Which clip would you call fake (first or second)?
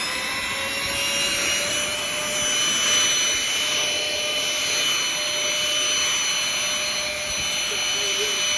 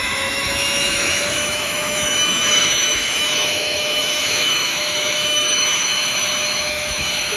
second